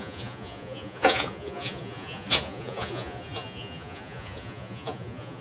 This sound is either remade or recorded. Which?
remade